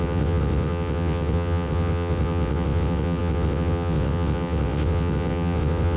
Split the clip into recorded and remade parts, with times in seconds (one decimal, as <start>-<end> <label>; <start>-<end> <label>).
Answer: 0.0-6.0 remade

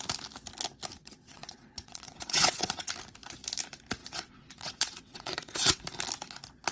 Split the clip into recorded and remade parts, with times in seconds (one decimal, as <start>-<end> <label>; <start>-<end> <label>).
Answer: 0.0-1.0 recorded; 1.0-2.9 remade; 2.9-4.0 recorded; 4.0-5.8 remade; 5.8-6.7 recorded

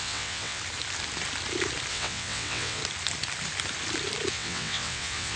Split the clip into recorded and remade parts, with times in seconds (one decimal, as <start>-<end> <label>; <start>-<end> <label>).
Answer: 0.0-0.6 remade; 0.6-1.9 recorded; 1.9-2.8 remade; 2.8-4.3 recorded; 4.3-5.4 remade

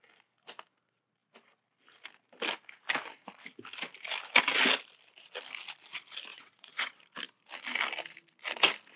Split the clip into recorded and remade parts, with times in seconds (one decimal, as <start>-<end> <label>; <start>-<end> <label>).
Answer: 0.0-6.3 recorded; 6.3-7.0 remade; 7.0-9.0 recorded

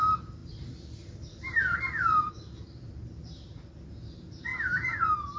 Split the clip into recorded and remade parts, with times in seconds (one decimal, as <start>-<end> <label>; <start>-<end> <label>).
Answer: 0.0-5.4 recorded